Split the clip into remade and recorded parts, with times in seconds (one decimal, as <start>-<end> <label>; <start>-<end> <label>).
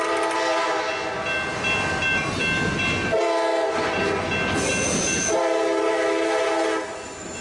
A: 0.0-7.4 recorded